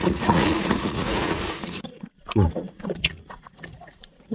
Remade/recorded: remade